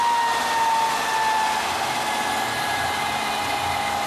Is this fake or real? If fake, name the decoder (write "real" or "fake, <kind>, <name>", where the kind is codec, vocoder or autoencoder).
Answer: real